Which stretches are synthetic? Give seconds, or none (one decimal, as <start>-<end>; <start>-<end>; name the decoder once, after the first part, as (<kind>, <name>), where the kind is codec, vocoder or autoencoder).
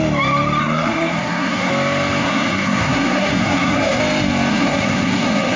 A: 0.6-1.7 (codec, SNAC); 2.2-4.0; 4.5-5.6